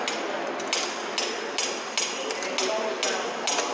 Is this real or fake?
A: real